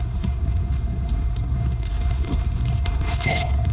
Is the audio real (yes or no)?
no